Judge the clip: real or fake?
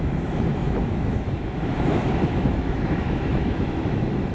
fake